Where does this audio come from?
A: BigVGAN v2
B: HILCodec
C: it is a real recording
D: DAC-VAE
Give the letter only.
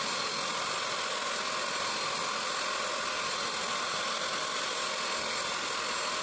C